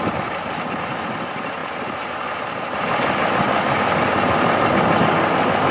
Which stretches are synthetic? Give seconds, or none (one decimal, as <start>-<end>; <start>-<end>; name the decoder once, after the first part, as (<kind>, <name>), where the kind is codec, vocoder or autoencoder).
none